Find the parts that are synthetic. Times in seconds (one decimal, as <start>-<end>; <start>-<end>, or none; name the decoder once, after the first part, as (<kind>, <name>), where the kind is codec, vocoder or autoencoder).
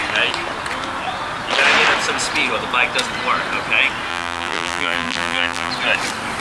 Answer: 4.1-5.7 (vocoder, BigVGAN v2)